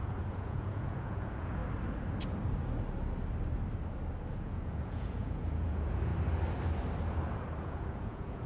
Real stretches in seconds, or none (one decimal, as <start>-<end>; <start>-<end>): 1.6-4.3; 6.1-7.6